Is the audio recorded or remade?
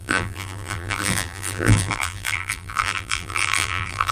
remade